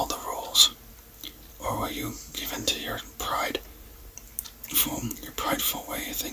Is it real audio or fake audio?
real